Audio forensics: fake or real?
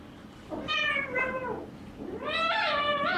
real